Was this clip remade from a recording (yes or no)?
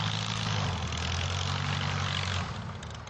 no